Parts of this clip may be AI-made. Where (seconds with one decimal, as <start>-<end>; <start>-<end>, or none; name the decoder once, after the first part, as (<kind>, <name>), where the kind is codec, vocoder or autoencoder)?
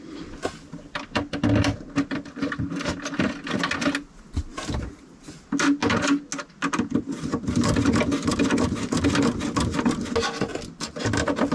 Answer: none